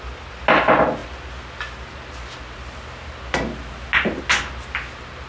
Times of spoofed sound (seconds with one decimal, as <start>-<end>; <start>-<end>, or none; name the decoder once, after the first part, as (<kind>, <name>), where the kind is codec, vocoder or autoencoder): none